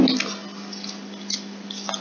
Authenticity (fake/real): real